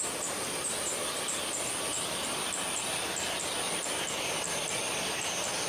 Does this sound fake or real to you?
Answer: real